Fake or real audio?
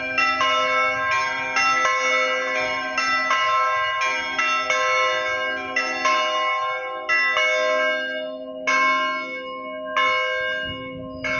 real